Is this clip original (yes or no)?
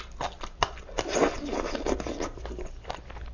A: yes